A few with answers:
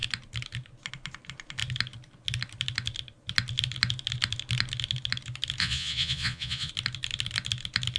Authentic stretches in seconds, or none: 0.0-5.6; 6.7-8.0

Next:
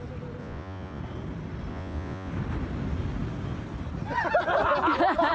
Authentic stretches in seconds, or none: 0.0-0.4; 1.0-1.7; 2.3-5.3

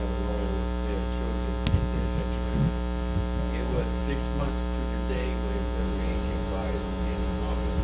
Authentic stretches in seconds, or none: 0.0-5.8

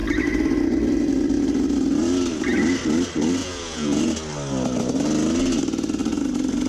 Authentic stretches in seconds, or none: 0.0-3.4; 4.0-6.7

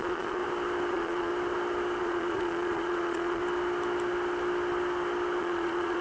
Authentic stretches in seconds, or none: 0.4-0.9; 1.3-2.0; 3.4-5.4

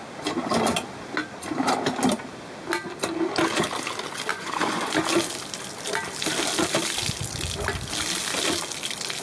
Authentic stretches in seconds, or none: 0.0-4.3; 4.9-9.2

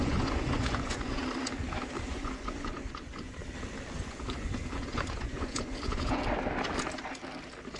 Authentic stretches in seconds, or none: 1.2-2.1; 3.4-4.0; 6.2-7.8